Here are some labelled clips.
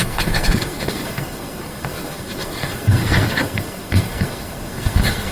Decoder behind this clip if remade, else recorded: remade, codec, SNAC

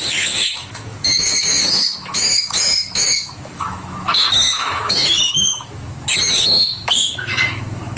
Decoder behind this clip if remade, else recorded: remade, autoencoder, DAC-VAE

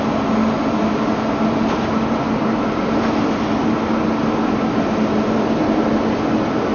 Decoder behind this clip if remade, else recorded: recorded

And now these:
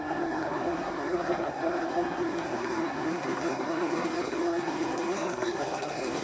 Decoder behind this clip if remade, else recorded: remade, codec, SNAC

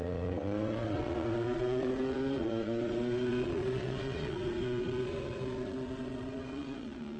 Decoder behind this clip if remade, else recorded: remade, vocoder, Vocos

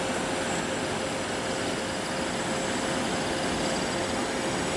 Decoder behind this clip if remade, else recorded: recorded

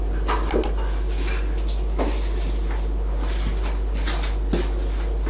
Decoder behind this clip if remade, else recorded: recorded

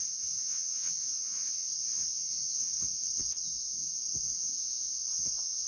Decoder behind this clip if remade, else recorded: remade, vocoder, WaveNeXt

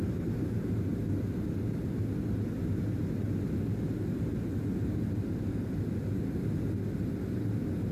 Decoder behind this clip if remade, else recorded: recorded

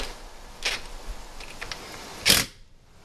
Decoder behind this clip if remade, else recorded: recorded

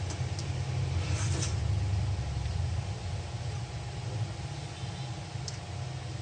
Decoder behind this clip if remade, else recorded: recorded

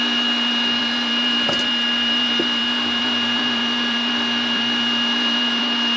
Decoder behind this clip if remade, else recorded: remade, vocoder, BigVGAN v2